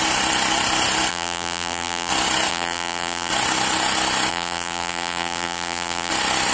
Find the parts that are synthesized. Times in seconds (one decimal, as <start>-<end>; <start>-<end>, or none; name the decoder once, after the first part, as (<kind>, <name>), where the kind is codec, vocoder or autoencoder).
1.1-2.1 (vocoder, BigVGAN v2); 2.5-3.3; 4.3-6.1